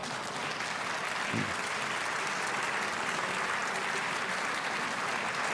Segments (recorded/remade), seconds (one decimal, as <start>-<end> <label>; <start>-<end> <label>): 0.0-5.5 recorded